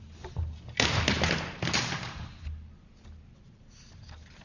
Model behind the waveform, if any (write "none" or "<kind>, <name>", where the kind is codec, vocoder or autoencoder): none